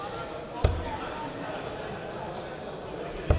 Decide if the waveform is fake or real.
real